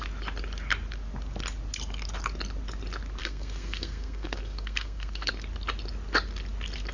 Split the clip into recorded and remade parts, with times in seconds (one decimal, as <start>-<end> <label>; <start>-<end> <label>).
0.0-3.2 recorded; 3.2-5.3 remade; 5.3-6.9 recorded